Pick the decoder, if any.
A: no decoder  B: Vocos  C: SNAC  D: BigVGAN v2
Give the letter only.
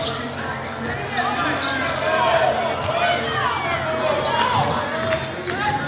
A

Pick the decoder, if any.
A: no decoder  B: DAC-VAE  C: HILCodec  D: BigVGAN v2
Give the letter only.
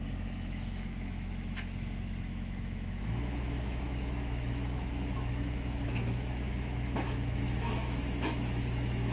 B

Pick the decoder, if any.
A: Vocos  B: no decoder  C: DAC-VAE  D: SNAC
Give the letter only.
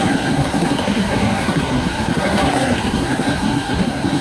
D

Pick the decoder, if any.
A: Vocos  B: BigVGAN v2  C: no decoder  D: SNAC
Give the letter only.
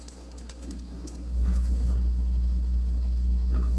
D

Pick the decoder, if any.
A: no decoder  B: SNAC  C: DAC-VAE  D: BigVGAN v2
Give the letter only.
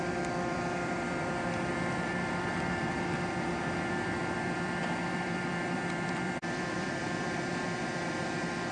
D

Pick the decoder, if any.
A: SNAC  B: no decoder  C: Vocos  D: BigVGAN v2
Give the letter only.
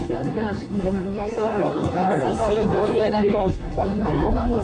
A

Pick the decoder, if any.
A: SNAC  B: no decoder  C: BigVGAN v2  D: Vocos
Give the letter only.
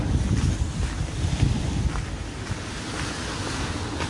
B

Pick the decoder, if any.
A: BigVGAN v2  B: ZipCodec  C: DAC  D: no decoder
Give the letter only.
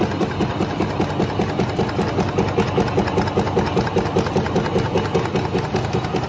D